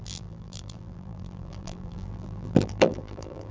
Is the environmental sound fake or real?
fake